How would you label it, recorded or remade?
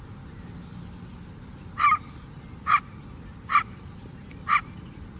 recorded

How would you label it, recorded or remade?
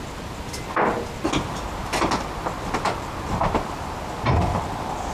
recorded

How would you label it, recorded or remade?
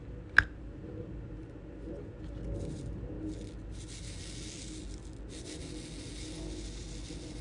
recorded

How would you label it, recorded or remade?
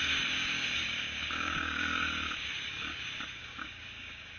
remade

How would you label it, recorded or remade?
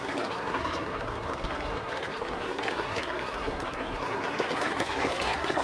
remade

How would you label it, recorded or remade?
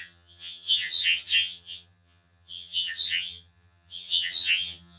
remade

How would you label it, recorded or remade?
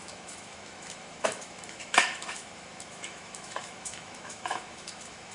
remade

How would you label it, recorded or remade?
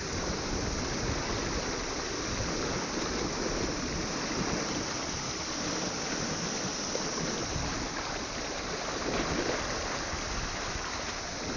recorded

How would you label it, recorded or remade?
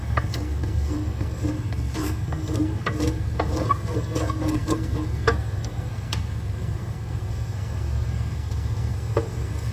remade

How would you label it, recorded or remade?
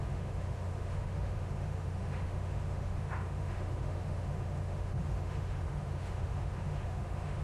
remade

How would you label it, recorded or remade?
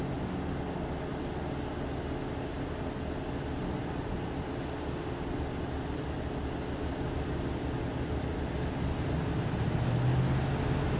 recorded